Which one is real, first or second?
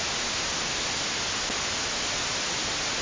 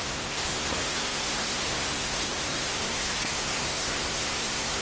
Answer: first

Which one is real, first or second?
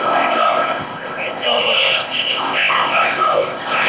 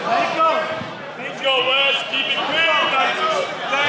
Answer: second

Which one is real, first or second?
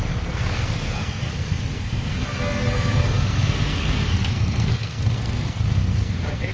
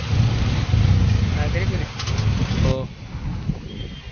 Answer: second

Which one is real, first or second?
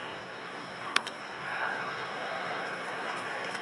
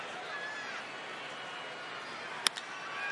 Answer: second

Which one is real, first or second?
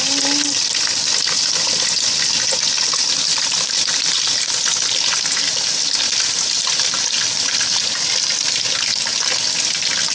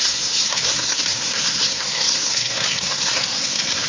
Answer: first